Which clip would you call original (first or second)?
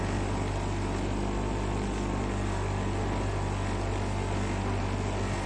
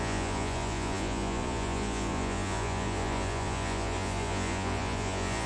first